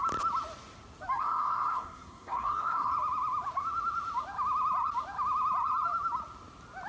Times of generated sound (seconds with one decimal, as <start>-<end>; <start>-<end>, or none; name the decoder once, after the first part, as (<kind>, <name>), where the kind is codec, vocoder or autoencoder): 1.2-2.9 (codec, SNAC)